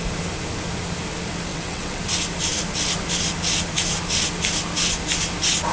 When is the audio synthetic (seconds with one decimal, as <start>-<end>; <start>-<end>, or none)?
1.5-2.0

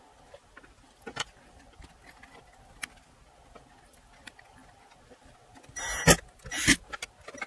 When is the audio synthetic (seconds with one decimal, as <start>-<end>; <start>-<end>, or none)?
none